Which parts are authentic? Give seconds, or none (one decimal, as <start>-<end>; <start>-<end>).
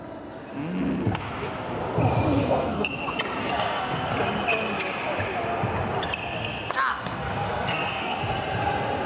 0.0-2.4; 2.9-3.4; 4.1-6.9; 8.2-9.1